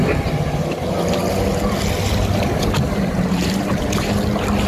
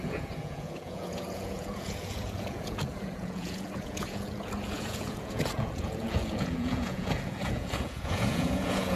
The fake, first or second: second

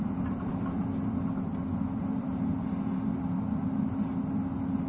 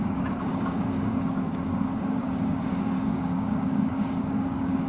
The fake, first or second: second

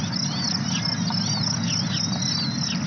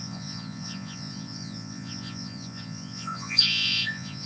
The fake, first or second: second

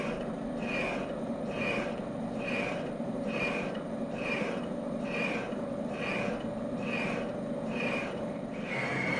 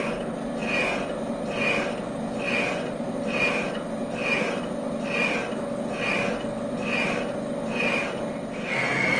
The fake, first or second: first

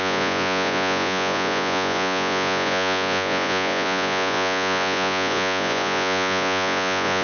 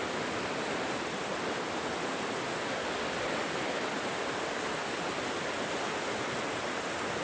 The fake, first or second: first